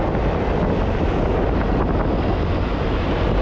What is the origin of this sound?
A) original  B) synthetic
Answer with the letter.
A